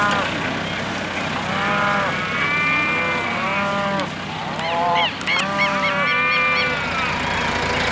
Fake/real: real